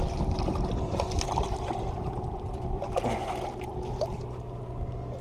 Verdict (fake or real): real